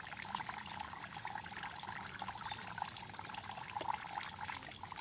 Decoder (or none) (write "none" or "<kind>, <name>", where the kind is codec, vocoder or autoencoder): none